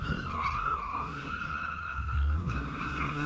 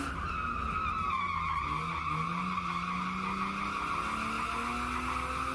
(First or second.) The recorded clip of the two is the second